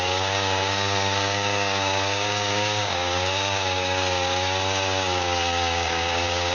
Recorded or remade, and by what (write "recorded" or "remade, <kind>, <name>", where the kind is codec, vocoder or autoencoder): remade, codec, DAC